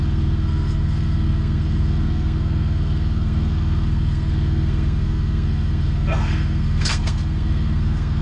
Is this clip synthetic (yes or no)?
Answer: yes